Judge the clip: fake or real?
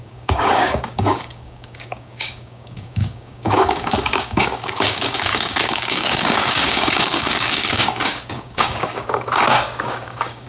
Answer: fake